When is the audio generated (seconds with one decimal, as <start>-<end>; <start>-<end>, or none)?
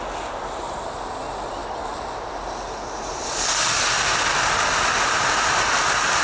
none